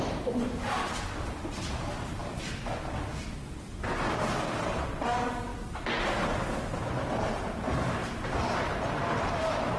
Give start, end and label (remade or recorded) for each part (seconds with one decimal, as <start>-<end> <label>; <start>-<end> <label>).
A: 0.0-2.2 remade; 2.2-4.6 recorded; 4.6-5.5 remade; 5.5-7.1 recorded; 7.1-8.0 remade; 8.0-9.4 recorded; 9.4-9.8 remade